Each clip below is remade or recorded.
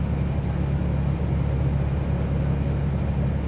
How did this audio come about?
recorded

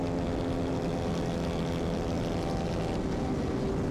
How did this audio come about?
recorded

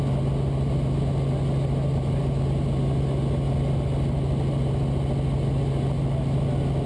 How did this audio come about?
recorded